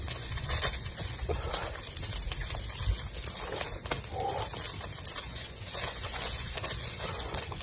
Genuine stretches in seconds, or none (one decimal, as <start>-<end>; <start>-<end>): 1.5-5.2